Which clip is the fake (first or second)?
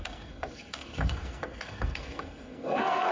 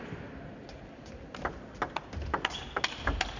first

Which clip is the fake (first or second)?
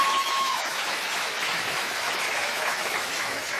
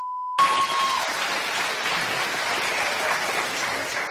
first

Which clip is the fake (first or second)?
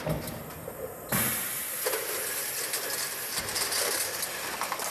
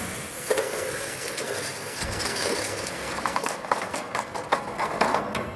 second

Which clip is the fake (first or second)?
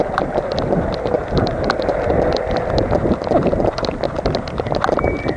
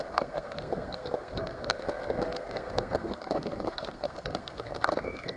second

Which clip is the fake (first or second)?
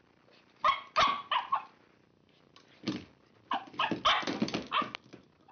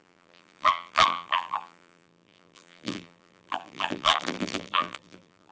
second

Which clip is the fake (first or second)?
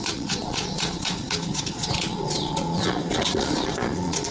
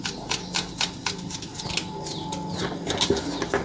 first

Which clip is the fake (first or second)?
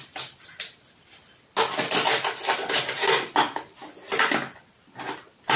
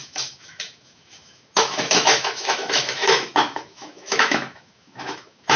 second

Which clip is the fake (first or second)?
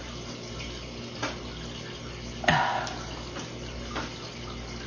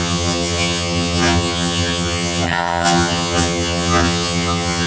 second